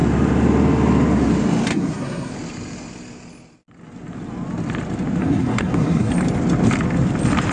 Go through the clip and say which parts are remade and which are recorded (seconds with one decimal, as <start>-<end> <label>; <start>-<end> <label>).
0.0-1.7 recorded; 1.7-2.3 remade; 2.3-5.2 recorded; 5.2-6.1 remade; 6.1-7.5 recorded